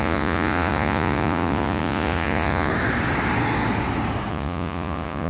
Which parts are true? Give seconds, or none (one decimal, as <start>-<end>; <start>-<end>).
2.7-4.3